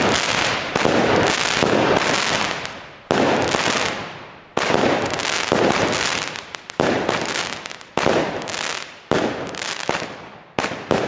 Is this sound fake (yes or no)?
no